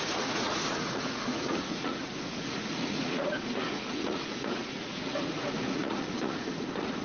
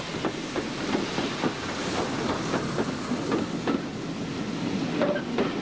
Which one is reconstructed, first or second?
first